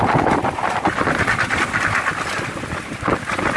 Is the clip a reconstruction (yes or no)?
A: no